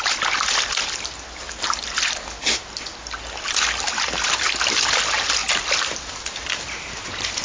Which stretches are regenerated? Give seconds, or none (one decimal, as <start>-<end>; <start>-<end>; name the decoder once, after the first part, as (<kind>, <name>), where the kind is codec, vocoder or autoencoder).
none